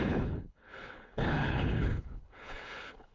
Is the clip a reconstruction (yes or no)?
yes